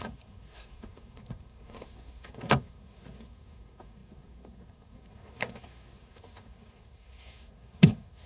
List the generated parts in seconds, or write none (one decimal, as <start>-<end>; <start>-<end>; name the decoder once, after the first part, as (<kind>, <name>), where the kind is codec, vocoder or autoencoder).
0.0-8.3 (codec, SNAC)